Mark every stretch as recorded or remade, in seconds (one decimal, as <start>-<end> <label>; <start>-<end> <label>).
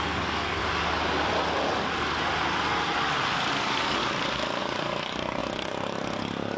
0.0-0.6 remade; 0.6-3.5 recorded; 3.5-4.0 remade; 4.0-4.6 recorded; 4.6-6.6 remade